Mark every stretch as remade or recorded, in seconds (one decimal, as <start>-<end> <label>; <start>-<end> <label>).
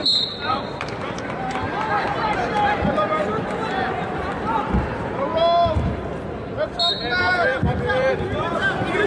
0.0-0.5 recorded; 0.5-5.3 remade; 5.3-7.2 recorded; 7.2-9.1 remade